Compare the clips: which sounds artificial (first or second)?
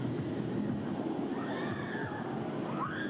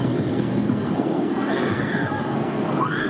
second